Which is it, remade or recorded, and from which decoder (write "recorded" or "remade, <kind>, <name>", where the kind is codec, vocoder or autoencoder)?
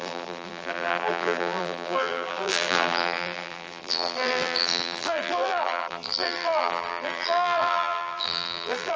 remade, vocoder, BigVGAN v2